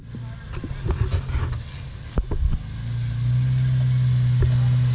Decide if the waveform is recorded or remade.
recorded